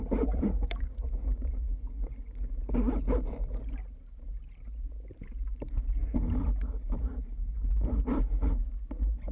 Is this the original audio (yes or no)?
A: yes